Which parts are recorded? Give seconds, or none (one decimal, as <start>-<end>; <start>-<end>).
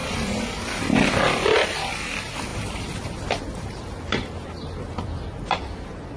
1.2-2.5; 3.8-6.2